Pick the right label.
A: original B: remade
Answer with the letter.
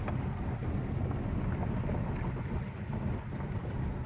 A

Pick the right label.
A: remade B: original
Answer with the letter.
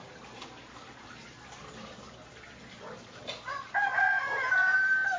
B